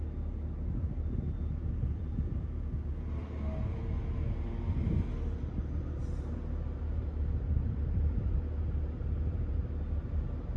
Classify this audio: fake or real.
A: real